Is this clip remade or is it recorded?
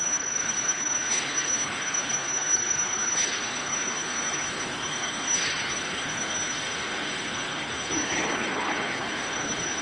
remade